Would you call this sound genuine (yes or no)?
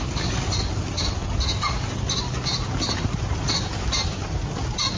yes